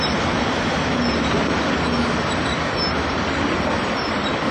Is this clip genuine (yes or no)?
yes